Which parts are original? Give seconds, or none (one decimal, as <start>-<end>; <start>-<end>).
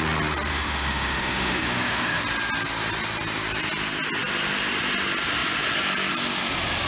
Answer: 0.0-0.5; 2.2-6.9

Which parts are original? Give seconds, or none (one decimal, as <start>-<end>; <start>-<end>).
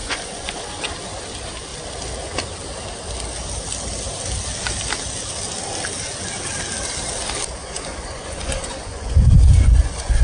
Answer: 0.6-7.6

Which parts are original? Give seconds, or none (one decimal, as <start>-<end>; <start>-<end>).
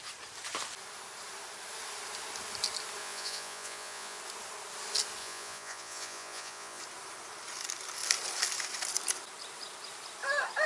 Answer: 0.0-3.0; 4.2-5.2; 6.8-10.7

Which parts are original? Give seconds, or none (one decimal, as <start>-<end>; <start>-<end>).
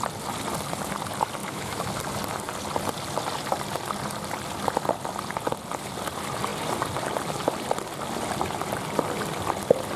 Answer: 0.0-1.4; 1.9-10.0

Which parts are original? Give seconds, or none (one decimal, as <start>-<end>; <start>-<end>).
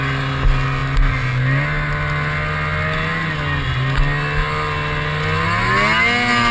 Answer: 0.0-6.5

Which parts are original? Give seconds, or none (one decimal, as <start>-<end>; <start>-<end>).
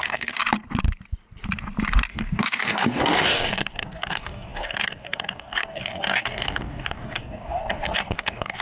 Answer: 0.4-2.1